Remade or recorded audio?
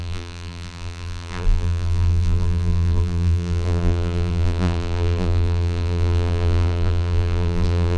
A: remade